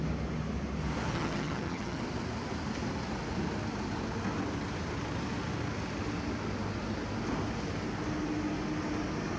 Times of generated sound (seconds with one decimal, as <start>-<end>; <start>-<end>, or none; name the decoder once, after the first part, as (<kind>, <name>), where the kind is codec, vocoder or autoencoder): 1.1-2.0 (vocoder, HiFi-GAN)